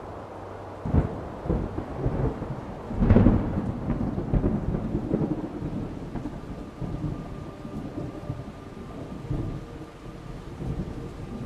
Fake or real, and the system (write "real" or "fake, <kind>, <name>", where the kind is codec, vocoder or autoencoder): real